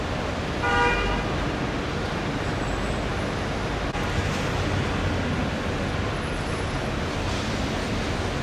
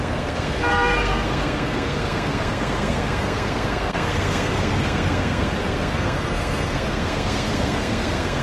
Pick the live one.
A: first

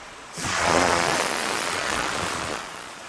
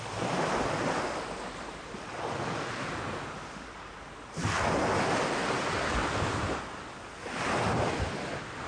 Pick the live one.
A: second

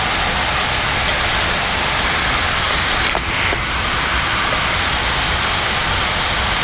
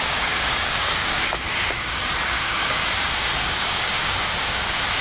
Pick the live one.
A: first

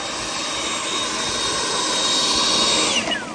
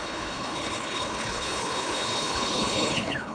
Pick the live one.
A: first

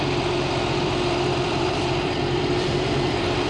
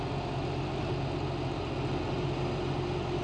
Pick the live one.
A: second